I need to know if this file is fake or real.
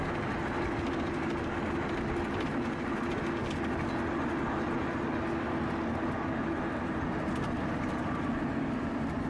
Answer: real